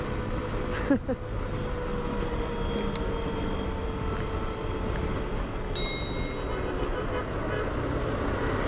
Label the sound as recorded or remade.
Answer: recorded